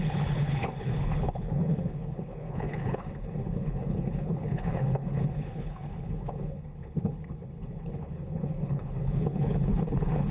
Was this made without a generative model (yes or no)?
no